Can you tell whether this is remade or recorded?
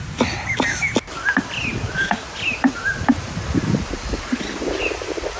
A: recorded